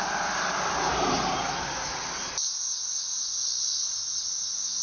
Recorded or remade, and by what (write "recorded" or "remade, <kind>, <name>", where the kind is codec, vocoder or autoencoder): recorded